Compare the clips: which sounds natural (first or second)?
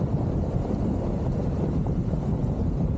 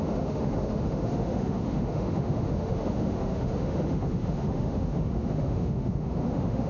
first